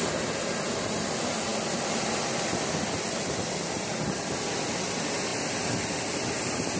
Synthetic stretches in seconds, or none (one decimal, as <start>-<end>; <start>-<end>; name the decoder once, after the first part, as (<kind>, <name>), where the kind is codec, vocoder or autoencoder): 1.5-4.3 (vocoder, BigVGAN v2); 5.3-6.2